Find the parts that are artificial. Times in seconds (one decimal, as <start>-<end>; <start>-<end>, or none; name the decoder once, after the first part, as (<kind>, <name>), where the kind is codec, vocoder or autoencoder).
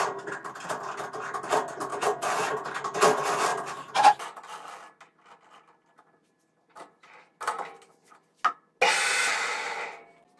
1.9-2.4 (vocoder, Vocos)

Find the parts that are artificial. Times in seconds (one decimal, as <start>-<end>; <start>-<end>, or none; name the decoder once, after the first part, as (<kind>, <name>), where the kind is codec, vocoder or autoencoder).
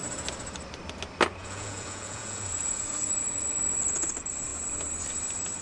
1.4-4.1 (vocoder, Vocos)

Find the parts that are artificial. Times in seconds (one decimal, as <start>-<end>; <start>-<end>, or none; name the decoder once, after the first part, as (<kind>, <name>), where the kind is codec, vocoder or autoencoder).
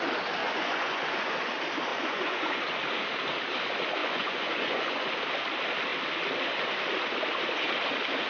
0.4-1.5 (vocoder, Vocos); 1.9-2.6; 4.0-5.1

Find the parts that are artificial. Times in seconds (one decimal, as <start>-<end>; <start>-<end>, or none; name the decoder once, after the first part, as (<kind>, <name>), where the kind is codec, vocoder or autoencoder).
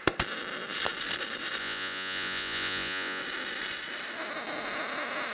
1.6-3.2 (vocoder, Vocos)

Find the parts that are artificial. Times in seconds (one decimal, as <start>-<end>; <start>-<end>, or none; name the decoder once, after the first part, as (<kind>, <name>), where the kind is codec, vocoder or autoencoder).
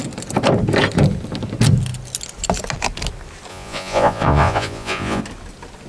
3.5-5.2 (vocoder, Vocos)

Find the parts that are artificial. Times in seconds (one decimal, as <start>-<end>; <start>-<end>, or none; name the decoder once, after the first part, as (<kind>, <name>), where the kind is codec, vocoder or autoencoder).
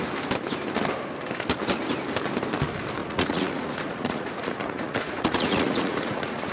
3.0-6.5 (vocoder, Vocos)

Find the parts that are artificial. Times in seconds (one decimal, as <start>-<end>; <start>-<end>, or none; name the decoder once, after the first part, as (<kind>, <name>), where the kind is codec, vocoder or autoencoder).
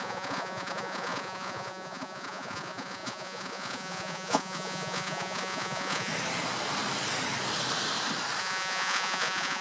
0.0-6.1 (vocoder, Vocos); 8.4-9.6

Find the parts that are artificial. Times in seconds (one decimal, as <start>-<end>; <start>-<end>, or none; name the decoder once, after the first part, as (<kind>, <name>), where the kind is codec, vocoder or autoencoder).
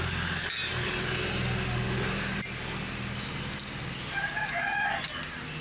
none